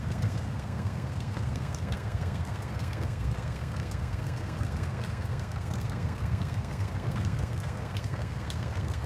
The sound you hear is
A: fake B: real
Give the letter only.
A